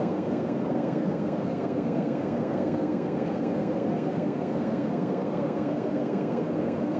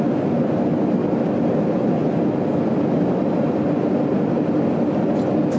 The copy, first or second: first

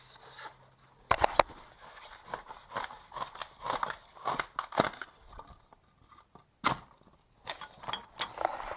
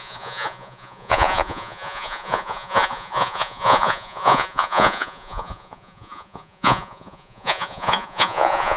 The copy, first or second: second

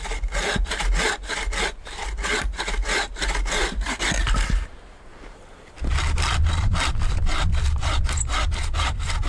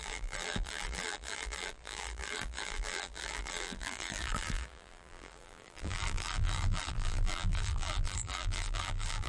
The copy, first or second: second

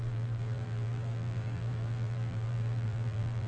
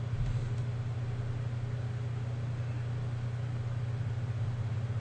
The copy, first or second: first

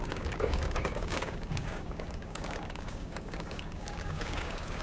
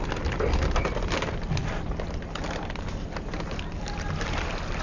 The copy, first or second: first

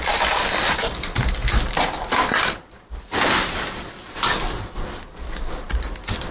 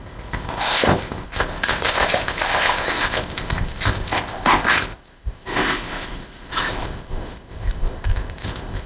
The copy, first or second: second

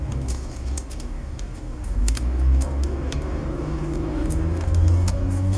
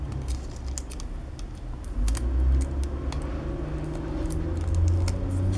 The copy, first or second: first